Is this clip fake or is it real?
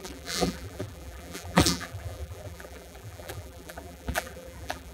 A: fake